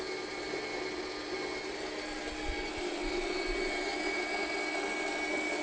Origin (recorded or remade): recorded